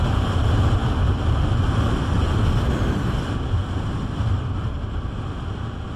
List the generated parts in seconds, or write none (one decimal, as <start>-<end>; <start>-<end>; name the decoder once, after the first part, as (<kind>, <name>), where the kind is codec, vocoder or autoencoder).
none